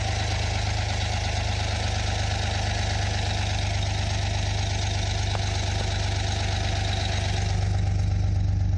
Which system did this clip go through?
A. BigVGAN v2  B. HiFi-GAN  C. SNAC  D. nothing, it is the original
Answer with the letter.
D